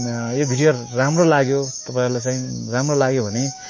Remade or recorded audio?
remade